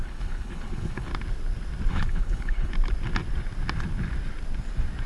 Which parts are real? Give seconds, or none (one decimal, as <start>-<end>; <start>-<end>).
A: 1.1-1.9; 2.7-5.1